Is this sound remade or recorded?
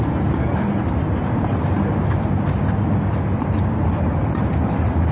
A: remade